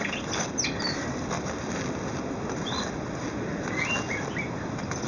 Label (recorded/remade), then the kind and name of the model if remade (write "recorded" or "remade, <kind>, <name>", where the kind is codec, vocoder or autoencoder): recorded